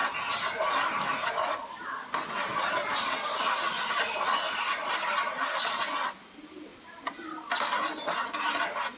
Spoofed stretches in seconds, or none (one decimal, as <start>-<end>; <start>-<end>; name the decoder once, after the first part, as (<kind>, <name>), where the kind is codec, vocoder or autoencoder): none